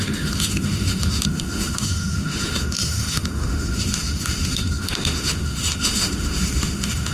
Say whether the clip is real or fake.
fake